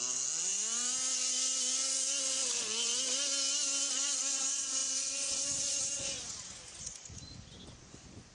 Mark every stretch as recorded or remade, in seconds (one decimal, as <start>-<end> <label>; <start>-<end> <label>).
0.0-0.5 remade; 0.5-3.9 recorded; 3.9-8.3 remade

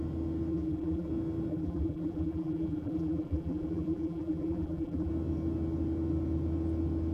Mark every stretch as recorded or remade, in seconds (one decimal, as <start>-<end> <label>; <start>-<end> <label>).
0.0-0.5 recorded; 0.5-1.1 remade; 1.1-1.5 recorded; 1.5-5.1 remade; 5.1-7.1 recorded

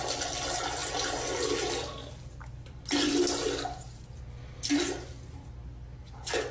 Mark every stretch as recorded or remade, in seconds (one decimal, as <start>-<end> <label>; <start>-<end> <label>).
0.0-6.5 recorded

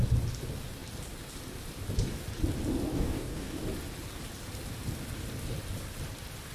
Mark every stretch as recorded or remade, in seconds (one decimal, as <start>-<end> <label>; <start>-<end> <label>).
0.0-2.9 recorded; 2.9-3.6 remade; 3.6-6.5 recorded